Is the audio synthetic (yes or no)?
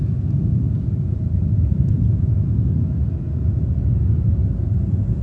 yes